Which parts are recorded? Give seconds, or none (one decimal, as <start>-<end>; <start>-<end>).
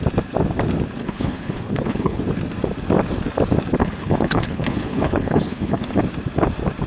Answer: 0.0-1.0; 2.2-3.8; 6.0-6.9